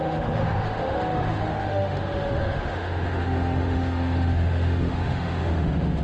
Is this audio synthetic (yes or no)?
yes